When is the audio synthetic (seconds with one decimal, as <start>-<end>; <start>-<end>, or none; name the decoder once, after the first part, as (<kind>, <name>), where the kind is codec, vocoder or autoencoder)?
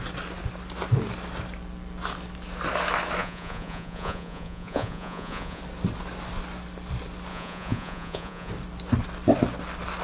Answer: 3.2-5.6 (vocoder, Vocos); 7.3-8.5